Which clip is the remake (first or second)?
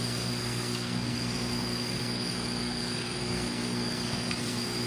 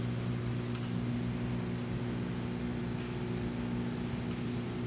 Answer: first